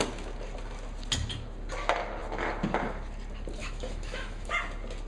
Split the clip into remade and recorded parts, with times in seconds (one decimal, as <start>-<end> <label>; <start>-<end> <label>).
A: 0.0-3.6 recorded; 3.6-4.5 remade; 4.5-5.1 recorded